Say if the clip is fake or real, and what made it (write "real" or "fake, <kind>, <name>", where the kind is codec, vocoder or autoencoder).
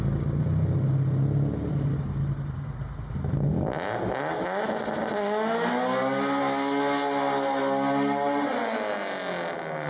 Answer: real